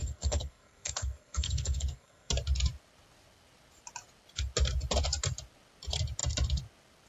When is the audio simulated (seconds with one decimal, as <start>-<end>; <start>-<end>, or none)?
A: 0.0-2.3